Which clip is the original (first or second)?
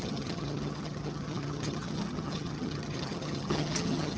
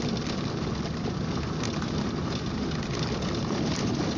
second